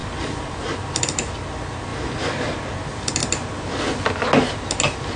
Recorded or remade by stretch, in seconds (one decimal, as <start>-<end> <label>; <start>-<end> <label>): 0.0-1.3 remade; 1.3-5.2 recorded